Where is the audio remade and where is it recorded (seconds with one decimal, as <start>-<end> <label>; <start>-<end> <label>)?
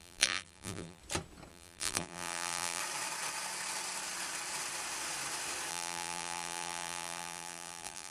0.0-1.0 remade; 1.0-1.5 recorded; 1.5-2.8 remade; 2.8-5.7 recorded; 5.7-8.1 remade